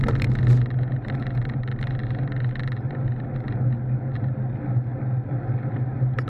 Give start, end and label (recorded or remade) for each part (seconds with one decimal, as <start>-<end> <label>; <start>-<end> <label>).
0.0-6.3 recorded